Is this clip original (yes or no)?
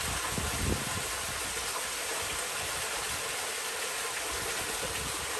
yes